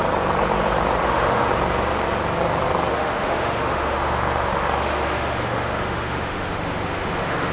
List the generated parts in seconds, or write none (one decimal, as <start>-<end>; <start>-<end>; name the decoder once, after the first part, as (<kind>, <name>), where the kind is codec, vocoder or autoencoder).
1.0-1.5 (autoencoder, DAC-VAE); 2.9-7.5